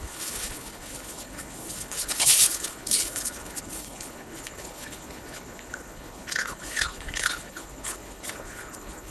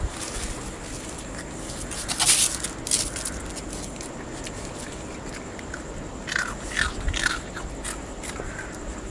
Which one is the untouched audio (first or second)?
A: second